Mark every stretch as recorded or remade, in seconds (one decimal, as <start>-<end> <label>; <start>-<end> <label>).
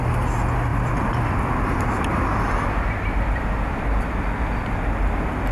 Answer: 0.0-0.7 recorded; 0.7-2.1 remade; 2.1-5.5 recorded